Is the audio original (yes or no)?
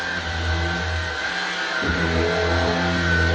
yes